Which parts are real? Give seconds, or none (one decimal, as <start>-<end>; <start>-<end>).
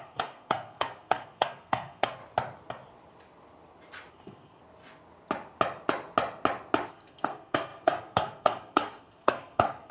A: 2.2-4.1; 4.6-6.9